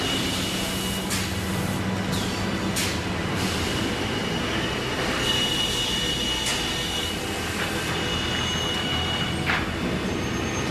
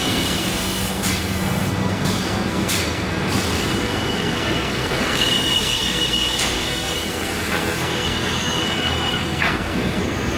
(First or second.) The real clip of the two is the first